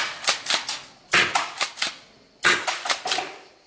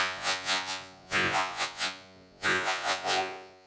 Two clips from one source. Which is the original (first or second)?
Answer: first